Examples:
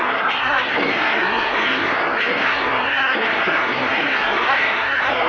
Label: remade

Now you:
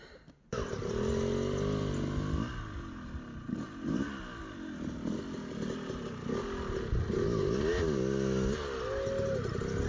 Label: recorded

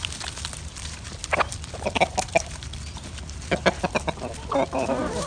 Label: remade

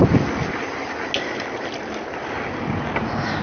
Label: recorded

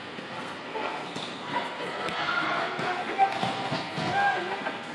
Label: remade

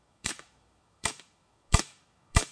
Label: remade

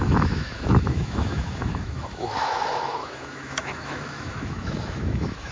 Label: remade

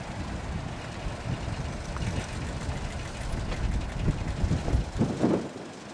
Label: recorded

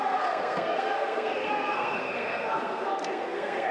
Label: remade